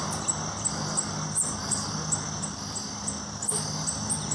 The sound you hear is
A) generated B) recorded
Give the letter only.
B